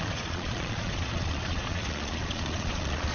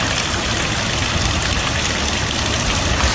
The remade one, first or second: first